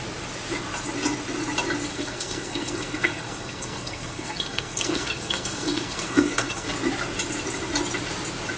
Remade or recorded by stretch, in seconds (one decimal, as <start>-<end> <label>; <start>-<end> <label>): 0.0-1.9 recorded; 1.9-6.7 remade; 6.7-8.6 recorded